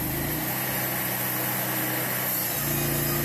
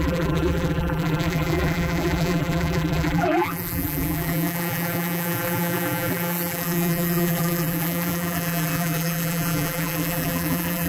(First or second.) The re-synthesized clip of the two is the second